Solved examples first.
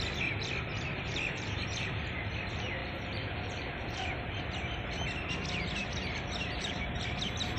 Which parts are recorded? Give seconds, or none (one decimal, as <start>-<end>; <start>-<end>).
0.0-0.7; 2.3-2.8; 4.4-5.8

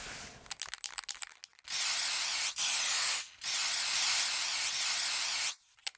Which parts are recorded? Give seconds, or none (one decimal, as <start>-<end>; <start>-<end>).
0.0-6.0

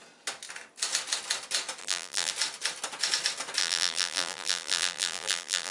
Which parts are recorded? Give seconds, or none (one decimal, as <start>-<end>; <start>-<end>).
0.0-1.8; 2.3-3.6

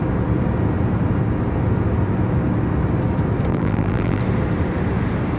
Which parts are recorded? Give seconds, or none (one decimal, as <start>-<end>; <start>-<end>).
0.0-3.5; 4.2-5.4

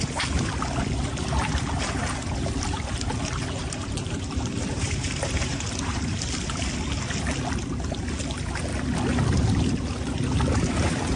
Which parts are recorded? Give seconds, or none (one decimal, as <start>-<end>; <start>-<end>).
0.0-3.6; 6.2-11.2